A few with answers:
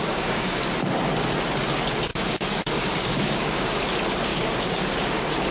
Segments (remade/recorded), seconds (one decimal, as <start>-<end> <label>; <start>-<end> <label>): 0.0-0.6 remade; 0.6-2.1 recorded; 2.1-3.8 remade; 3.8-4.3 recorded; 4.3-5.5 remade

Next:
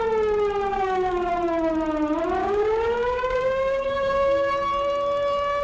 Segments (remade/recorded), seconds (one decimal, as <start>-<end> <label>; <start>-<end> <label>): 0.0-0.7 recorded; 0.7-1.3 remade; 1.3-2.4 recorded; 2.4-4.5 remade; 4.5-5.6 recorded

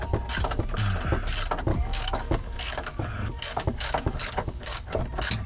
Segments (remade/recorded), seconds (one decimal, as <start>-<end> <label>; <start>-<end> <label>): 0.0-1.7 recorded; 1.7-5.0 remade; 5.0-5.5 recorded

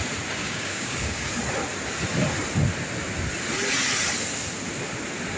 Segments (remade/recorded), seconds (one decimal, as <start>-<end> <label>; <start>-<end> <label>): 0.0-0.4 recorded; 0.4-1.3 remade; 1.3-5.4 recorded

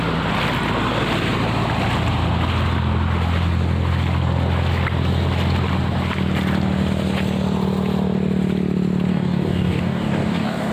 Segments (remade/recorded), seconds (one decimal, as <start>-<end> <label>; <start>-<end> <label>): 0.0-9.1 recorded; 9.1-10.7 remade